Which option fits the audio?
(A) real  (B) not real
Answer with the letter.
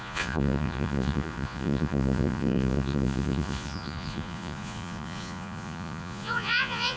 B